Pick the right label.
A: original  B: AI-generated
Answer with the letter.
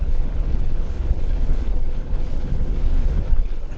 B